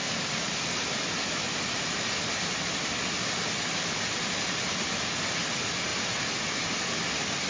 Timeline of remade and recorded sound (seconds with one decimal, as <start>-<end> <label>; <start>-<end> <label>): 0.0-7.5 recorded